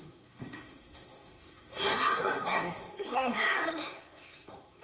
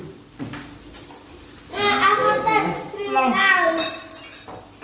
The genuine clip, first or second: second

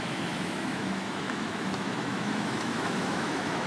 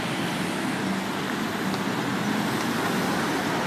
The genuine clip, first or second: second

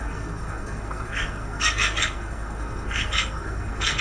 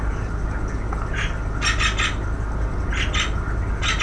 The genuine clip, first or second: second